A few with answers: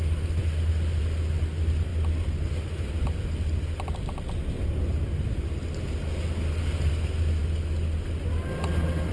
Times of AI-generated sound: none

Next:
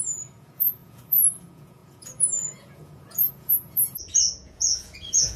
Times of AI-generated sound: 0.0-5.4 (vocoder, Vocos)

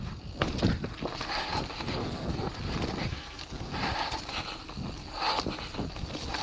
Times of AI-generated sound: 2.0-2.5 (codec, SNAC); 3.0-3.7

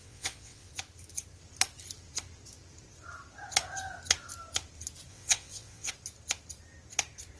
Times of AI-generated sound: 0.0-0.7 (vocoder, WaveNeXt); 5.1-5.9